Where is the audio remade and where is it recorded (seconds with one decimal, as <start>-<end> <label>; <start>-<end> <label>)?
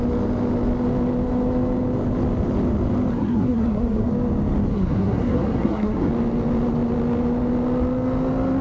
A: 0.0-3.1 recorded; 3.1-4.1 remade; 4.1-4.7 recorded; 4.7-6.1 remade; 6.1-8.6 recorded